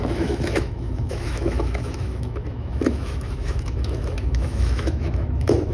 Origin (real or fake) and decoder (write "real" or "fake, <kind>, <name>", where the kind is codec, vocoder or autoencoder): fake, autoencoder, DAC-VAE